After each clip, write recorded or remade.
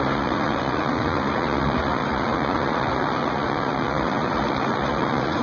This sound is remade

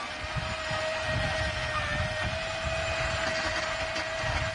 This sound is recorded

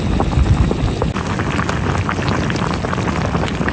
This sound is recorded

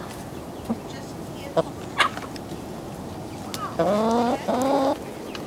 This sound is recorded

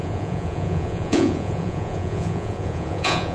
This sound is remade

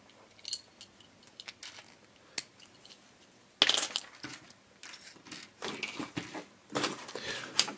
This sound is recorded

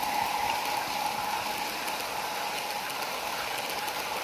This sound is recorded